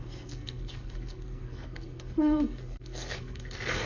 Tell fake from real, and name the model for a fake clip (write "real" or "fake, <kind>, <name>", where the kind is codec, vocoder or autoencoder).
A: fake, codec, SNAC